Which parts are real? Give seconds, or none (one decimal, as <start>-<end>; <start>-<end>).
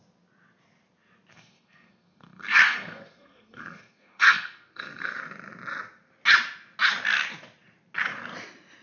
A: 0.0-1.3; 5.2-8.8